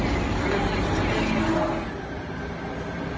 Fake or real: real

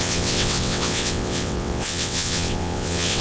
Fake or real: fake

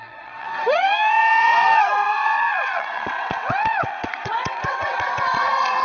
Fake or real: fake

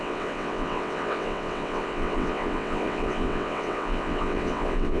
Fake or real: fake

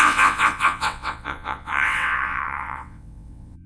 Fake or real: fake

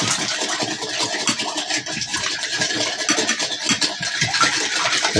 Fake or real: real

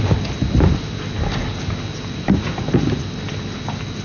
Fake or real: real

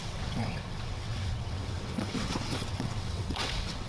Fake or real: fake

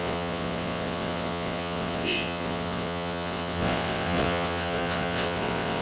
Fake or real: fake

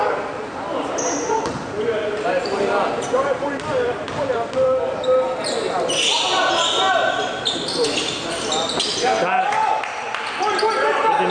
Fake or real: real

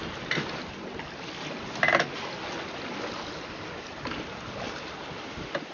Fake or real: real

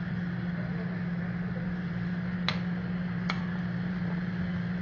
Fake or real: real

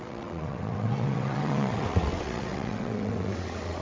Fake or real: fake